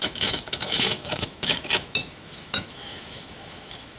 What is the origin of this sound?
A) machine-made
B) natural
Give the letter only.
A